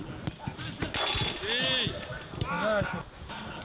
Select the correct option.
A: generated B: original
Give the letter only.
B